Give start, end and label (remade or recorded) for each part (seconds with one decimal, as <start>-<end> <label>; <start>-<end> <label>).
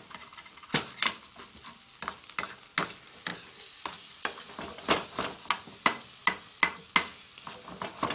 0.0-8.1 recorded